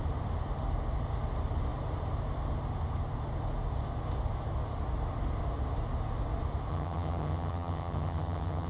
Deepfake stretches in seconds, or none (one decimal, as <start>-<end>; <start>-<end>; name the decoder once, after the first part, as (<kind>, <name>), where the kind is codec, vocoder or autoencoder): 6.7-8.7 (vocoder, HiFi-GAN)